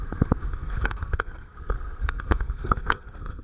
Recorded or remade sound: remade